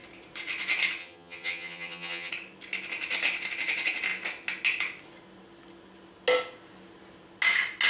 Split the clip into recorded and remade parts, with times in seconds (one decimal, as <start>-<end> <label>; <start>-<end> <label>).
0.0-1.0 recorded; 1.0-2.3 remade; 2.3-7.9 recorded